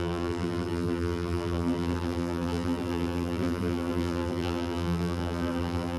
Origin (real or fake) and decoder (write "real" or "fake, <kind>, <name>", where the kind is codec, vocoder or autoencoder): fake, vocoder, BigVGAN v2